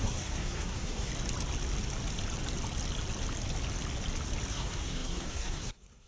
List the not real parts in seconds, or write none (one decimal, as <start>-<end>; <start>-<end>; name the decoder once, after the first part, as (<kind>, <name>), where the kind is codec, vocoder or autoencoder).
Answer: 0.0-1.1 (codec, SNAC); 4.5-6.1